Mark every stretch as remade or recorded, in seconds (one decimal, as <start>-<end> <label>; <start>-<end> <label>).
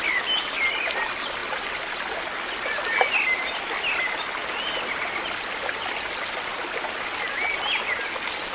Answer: 0.0-8.5 recorded